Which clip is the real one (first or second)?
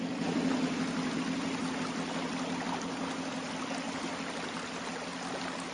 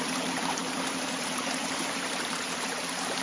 first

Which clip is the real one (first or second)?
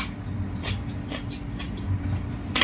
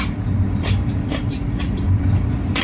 first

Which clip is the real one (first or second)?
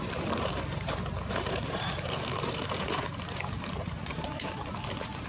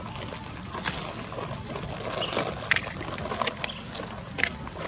second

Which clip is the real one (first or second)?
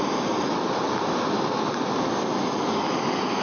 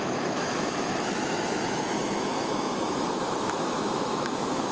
first